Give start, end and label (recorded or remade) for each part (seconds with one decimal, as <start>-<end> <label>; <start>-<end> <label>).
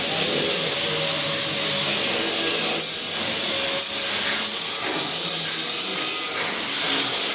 0.0-7.3 recorded